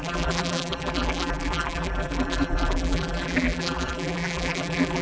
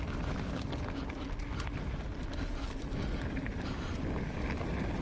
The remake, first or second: first